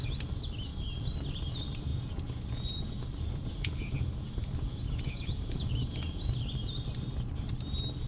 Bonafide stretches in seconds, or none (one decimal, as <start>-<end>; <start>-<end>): 0.0-1.9; 6.3-8.1